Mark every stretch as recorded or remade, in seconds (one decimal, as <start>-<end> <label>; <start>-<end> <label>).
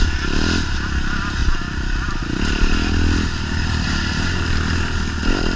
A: 0.0-1.4 recorded; 1.4-3.9 remade; 3.9-5.6 recorded